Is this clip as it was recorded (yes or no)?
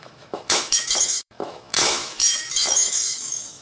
no